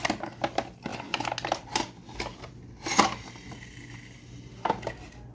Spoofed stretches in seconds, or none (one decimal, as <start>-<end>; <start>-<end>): none